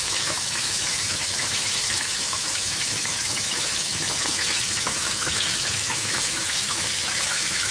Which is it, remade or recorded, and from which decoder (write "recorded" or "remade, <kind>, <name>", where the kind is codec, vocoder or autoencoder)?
remade, autoencoder, DAC-VAE